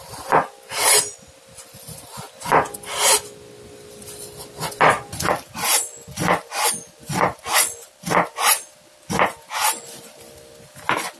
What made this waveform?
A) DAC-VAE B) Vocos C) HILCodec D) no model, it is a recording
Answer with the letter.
D